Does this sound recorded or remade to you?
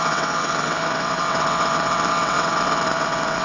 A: remade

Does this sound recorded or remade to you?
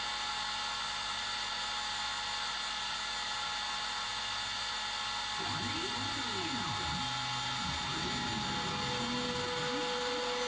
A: recorded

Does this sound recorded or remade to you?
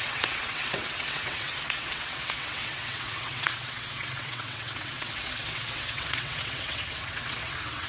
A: remade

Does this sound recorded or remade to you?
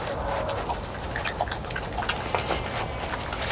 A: recorded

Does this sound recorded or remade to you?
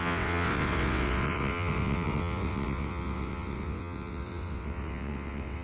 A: remade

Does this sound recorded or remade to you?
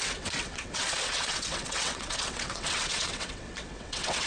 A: remade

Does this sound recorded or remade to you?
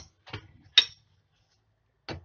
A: recorded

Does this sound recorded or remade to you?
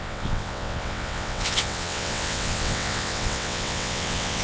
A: remade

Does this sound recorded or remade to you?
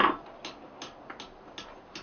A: recorded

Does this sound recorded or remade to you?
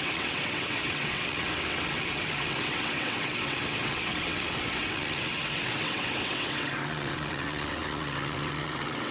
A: remade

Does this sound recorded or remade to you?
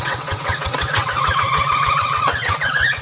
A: remade